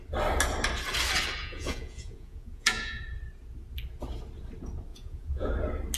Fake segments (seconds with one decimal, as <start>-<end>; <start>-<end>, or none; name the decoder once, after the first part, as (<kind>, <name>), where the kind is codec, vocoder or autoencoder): 1.4-3.0 (vocoder, Vocos); 4.9-5.5